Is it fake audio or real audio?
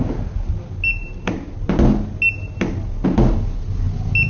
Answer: real